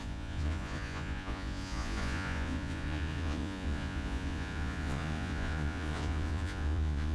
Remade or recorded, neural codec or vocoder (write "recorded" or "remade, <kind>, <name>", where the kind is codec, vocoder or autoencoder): remade, vocoder, Vocos